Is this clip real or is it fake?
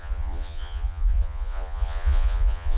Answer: fake